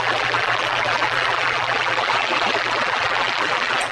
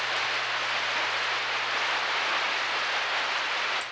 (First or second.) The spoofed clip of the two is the first